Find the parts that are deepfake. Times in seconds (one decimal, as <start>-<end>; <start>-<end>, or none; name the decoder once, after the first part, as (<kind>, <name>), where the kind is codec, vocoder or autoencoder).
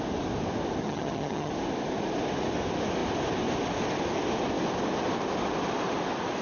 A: 0.8-1.5 (vocoder, HiFi-GAN)